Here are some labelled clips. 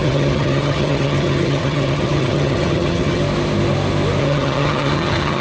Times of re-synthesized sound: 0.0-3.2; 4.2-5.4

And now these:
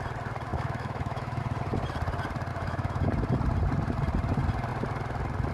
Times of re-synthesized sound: 0.5-1.4; 2.5-3.1

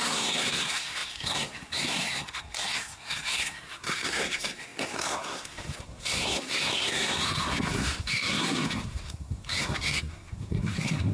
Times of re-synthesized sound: 0.0-11.1

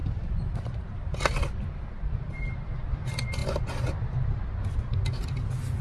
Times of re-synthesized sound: none

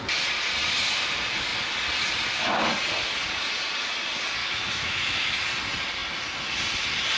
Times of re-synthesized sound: 4.4-5.4